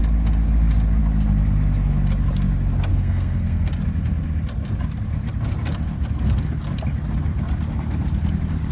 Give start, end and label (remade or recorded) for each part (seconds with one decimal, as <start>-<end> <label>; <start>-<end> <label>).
0.0-2.9 recorded; 2.9-3.7 remade; 3.7-8.7 recorded